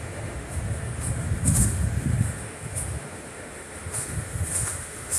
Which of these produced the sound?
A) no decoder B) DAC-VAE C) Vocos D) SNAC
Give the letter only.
B